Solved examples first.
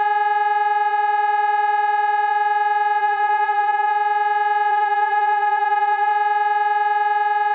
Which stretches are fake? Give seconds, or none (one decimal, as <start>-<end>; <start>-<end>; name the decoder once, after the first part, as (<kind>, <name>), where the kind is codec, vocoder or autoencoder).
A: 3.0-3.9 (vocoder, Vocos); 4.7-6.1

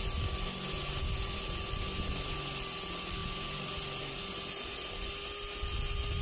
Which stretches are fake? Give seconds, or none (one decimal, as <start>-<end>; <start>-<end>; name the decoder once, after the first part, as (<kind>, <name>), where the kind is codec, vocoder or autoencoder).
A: none

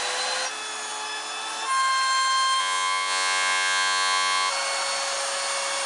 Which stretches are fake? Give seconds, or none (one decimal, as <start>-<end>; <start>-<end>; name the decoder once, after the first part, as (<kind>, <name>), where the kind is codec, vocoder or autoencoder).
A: 2.6-4.5 (vocoder, Vocos)

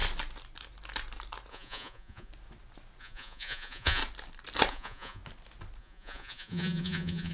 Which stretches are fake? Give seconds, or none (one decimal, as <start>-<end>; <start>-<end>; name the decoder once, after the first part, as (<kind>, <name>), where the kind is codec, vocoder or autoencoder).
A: 1.5-2.3 (vocoder, Vocos); 3.0-4.0; 4.7-5.2; 5.8-7.3

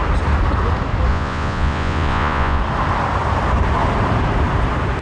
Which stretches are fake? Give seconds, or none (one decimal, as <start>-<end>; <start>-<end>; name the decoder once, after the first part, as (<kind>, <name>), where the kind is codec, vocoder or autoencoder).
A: 1.1-2.6 (vocoder, Vocos)

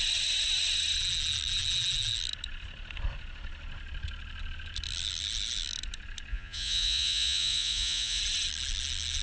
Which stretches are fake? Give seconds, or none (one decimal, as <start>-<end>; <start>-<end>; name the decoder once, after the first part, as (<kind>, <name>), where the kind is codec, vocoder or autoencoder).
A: 6.3-8.2 (vocoder, Vocos)